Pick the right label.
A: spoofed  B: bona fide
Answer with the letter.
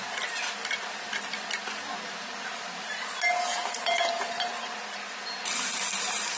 B